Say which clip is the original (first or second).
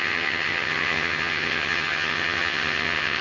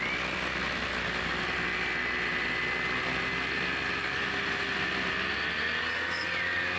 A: second